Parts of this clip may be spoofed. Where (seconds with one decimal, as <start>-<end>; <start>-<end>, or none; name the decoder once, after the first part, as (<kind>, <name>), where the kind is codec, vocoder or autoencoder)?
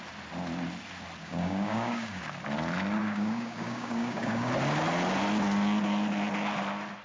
1.2-2.2 (codec, DAC); 3.0-4.5